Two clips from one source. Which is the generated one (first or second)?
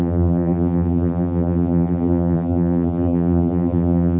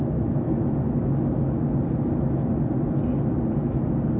first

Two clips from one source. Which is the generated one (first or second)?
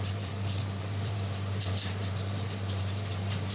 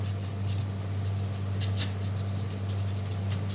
first